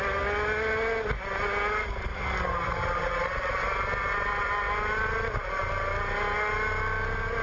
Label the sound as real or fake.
real